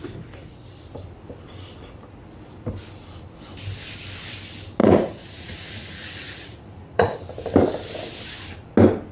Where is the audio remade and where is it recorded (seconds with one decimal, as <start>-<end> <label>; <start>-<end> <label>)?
0.0-4.8 recorded; 4.8-7.2 remade; 7.2-9.1 recorded